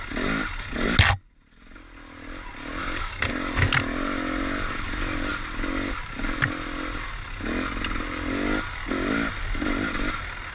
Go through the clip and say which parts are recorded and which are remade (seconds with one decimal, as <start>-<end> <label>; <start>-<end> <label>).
0.0-2.8 recorded; 2.8-3.3 remade; 3.3-10.5 recorded